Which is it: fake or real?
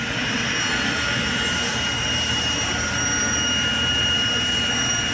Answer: fake